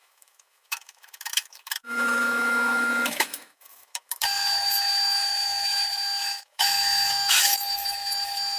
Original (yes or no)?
no